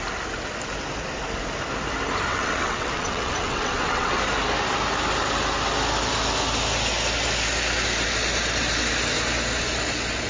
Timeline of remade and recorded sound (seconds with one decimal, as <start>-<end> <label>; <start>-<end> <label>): 0.0-2.3 recorded; 2.3-4.2 remade; 4.2-10.3 recorded